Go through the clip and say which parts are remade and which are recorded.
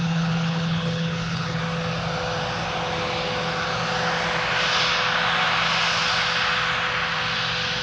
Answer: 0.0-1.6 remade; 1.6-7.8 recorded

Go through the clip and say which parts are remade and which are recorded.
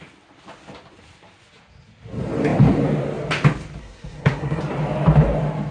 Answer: 0.0-3.8 recorded; 3.8-4.6 remade; 4.6-5.7 recorded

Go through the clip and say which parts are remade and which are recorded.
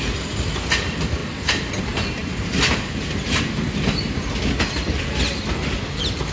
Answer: 0.0-2.2 recorded; 2.2-4.3 remade; 4.3-6.3 recorded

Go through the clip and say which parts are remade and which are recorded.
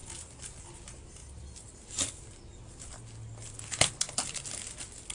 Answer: 0.0-5.1 recorded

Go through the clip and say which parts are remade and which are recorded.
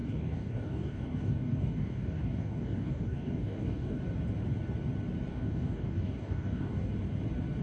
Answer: 0.0-4.0 remade; 4.0-5.3 recorded; 5.3-6.9 remade; 6.9-7.6 recorded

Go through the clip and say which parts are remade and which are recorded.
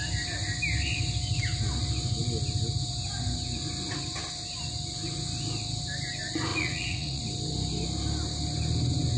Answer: 0.0-6.5 recorded; 6.5-7.2 remade; 7.2-9.2 recorded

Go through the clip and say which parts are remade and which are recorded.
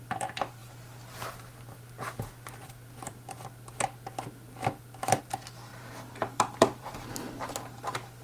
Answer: 0.0-5.7 recorded; 5.7-6.9 remade; 6.9-8.2 recorded